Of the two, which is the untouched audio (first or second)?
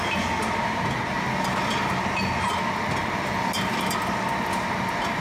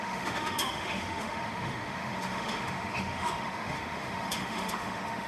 first